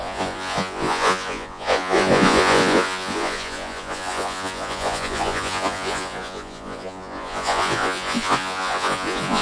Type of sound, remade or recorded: remade